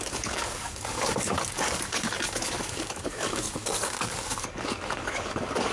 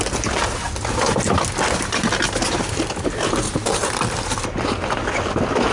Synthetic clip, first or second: first